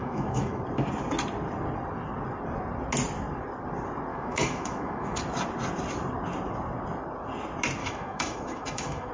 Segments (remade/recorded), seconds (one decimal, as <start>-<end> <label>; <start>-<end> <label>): 0.0-0.6 remade; 0.6-4.1 recorded; 4.1-5.2 remade; 5.2-7.8 recorded; 7.8-9.1 remade